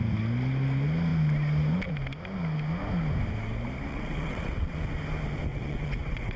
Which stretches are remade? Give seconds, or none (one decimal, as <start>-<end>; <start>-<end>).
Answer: 3.9-4.9; 5.5-6.4